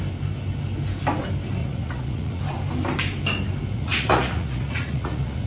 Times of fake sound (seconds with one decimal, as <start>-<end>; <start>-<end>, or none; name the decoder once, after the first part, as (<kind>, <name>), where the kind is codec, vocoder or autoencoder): 1.6-2.4 (vocoder, Vocos); 3.7-5.5